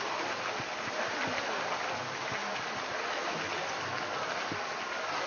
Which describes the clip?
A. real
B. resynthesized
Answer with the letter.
A